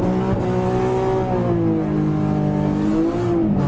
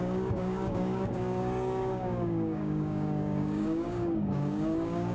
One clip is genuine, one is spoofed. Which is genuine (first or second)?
first